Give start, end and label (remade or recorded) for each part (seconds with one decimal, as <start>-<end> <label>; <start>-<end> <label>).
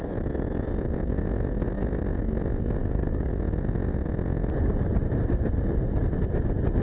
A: 0.0-2.8 recorded; 2.8-3.3 remade; 3.3-6.8 recorded